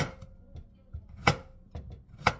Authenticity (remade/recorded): recorded